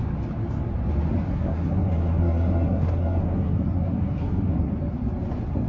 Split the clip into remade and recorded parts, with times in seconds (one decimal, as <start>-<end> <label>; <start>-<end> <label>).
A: 0.0-1.3 recorded; 1.3-4.7 remade; 4.7-5.7 recorded